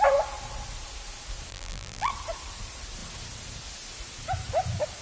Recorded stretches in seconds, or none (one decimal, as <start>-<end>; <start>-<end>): 0.0-1.5; 2.1-5.0